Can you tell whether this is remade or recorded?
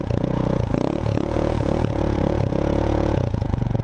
remade